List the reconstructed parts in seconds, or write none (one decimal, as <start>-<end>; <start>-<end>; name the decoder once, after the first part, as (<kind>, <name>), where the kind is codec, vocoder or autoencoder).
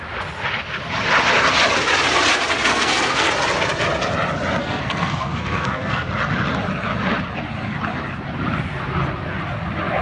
2.7-3.3 (codec, SNAC); 4.6-6.1